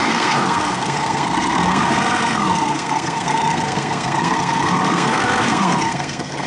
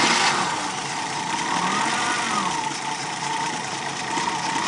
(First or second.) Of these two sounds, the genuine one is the second